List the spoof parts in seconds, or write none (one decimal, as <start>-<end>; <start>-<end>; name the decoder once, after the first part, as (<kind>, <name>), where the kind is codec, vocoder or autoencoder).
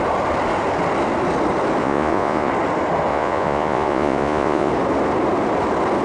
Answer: 1.8-2.5 (vocoder, Vocos); 3.1-4.7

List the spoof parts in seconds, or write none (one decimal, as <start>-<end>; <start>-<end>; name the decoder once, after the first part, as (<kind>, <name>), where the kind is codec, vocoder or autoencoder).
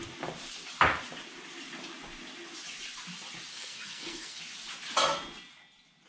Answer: 3.5-4.4 (codec, SNAC)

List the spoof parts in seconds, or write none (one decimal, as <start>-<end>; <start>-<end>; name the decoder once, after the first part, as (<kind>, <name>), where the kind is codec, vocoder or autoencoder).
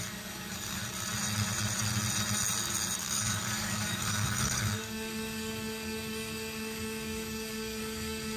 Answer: 0.0-0.8 (codec, DAC); 3.0-8.4